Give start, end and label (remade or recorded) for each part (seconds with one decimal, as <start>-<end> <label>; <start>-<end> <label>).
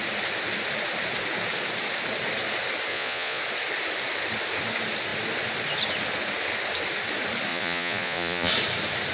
0.0-2.9 recorded; 2.9-3.4 remade; 3.4-7.5 recorded; 7.5-8.5 remade; 8.5-9.1 recorded